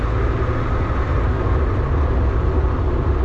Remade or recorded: recorded